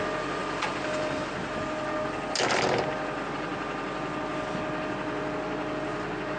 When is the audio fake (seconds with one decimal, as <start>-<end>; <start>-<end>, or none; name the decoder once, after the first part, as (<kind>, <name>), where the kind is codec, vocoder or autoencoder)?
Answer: none